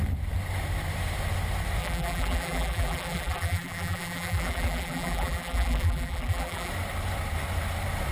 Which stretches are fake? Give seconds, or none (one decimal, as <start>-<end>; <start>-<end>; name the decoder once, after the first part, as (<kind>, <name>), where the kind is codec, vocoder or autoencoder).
1.8-6.7 (vocoder, BigVGAN v2)